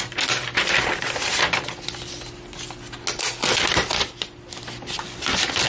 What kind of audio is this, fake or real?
real